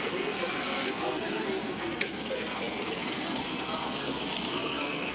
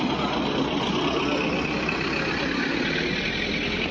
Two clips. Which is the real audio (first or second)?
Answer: second